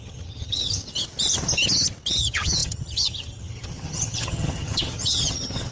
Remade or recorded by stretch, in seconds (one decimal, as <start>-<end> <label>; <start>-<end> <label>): 0.0-0.8 remade; 0.8-2.2 recorded; 2.2-5.7 remade